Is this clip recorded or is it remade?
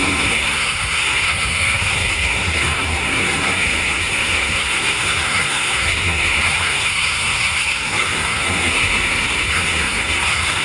remade